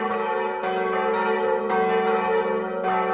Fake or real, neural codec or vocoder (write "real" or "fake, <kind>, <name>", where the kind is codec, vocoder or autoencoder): real